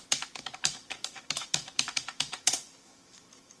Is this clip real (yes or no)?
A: no